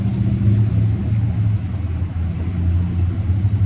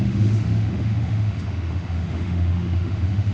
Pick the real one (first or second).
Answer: first